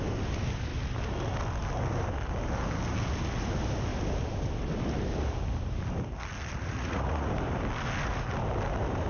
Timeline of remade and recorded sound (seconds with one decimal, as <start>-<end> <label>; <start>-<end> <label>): 0.0-6.6 recorded; 6.6-7.3 remade; 7.3-9.1 recorded